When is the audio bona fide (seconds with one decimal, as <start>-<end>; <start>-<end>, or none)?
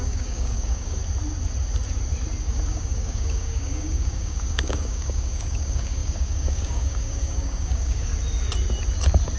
1.0-2.4; 8.1-9.4